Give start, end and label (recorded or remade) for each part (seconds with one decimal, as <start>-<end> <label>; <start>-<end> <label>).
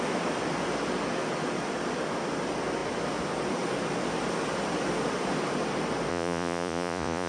0.0-6.1 recorded; 6.1-7.3 remade